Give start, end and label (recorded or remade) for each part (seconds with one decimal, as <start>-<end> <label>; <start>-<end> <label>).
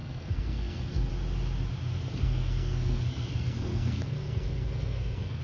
0.0-1.1 remade; 1.1-2.1 recorded; 2.1-5.4 remade